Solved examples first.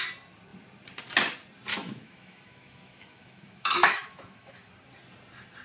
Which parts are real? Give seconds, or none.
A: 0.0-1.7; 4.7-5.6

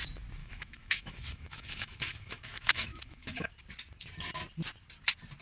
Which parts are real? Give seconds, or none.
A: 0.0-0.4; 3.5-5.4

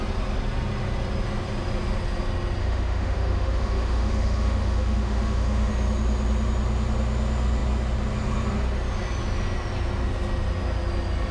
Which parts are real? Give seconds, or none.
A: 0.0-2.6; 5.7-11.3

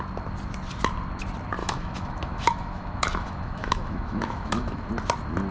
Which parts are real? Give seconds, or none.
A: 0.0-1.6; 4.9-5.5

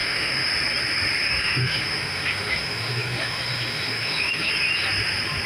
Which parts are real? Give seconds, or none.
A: 0.5-1.2; 4.5-5.5

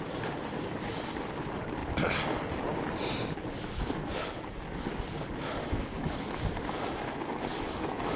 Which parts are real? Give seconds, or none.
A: 0.0-5.6